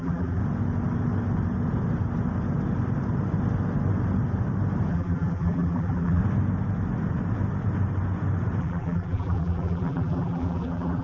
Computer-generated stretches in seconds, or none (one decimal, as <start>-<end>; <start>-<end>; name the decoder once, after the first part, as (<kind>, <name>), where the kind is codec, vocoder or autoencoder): 0.0-0.4 (vocoder, BigVGAN v2); 4.9-6.2; 8.6-11.0